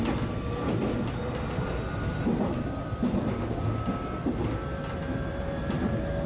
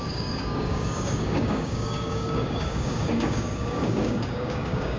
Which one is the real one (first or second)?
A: first